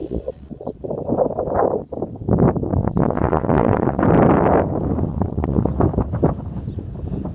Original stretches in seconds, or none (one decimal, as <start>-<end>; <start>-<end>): 0.7-2.8; 4.0-5.1; 5.7-7.3